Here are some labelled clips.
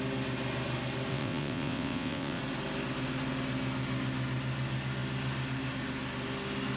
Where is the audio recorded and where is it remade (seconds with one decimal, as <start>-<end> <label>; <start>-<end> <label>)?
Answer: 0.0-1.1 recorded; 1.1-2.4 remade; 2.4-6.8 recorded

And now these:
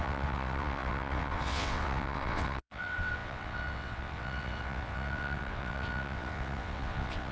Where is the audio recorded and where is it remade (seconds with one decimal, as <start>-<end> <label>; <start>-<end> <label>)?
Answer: 0.0-7.3 remade

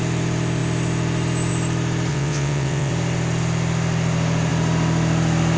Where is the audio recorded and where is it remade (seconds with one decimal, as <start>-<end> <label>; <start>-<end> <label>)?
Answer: 0.0-2.1 recorded; 2.1-2.9 remade; 2.9-5.6 recorded

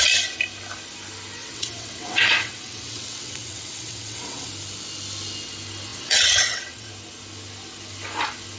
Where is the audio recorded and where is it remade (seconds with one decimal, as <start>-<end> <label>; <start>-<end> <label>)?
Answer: 0.0-1.4 recorded; 1.4-4.5 remade; 4.5-5.9 recorded; 5.9-6.9 remade; 6.9-8.6 recorded

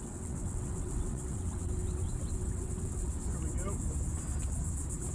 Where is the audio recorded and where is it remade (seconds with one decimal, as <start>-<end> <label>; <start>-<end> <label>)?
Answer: 0.0-3.1 remade; 3.1-5.1 recorded

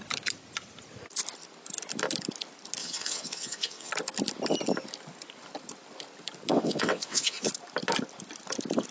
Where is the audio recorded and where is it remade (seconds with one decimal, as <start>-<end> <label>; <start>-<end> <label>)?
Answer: 0.0-2.8 recorded; 2.8-3.9 remade; 3.9-6.5 recorded; 6.5-7.5 remade; 7.5-8.9 recorded

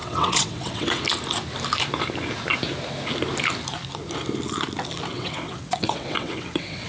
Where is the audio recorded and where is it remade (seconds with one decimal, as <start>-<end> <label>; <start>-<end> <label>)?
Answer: 0.0-1.0 remade; 1.0-5.1 recorded; 5.1-6.9 remade

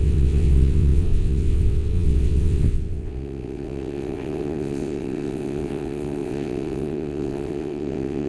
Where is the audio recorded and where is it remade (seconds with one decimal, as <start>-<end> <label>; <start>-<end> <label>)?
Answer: 0.0-8.3 remade